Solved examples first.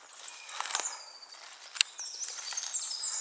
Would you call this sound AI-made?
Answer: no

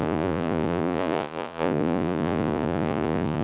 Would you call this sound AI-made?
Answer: yes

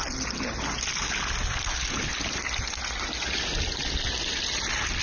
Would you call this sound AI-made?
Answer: no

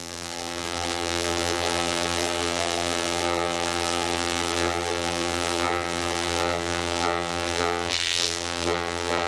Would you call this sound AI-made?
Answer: yes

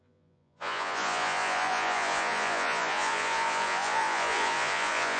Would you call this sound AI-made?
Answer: yes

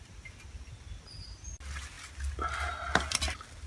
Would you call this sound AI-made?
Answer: no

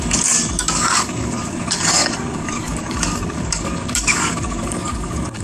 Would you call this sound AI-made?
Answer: yes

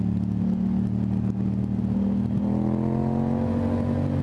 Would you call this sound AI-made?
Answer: no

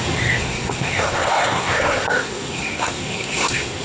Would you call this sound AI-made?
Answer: yes